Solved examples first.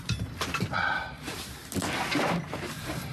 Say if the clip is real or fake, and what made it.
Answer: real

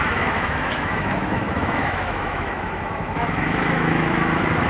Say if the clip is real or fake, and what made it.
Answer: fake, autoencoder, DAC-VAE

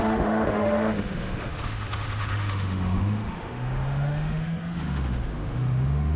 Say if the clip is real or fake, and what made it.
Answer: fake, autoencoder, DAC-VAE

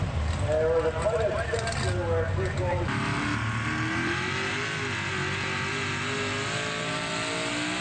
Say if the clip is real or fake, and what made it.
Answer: real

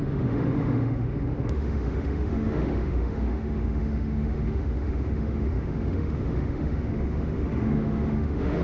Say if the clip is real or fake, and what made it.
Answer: fake, autoencoder, DAC-VAE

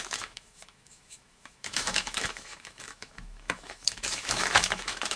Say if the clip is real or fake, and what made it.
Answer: fake, autoencoder, DAC-VAE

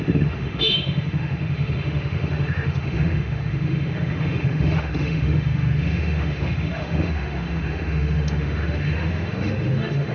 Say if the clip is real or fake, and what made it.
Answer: fake, autoencoder, DAC-VAE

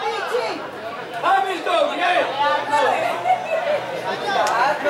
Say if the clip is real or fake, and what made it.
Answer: real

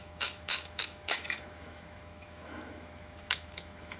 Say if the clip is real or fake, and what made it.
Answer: fake, autoencoder, DAC-VAE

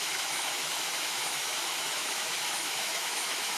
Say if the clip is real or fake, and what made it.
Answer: fake, autoencoder, DAC-VAE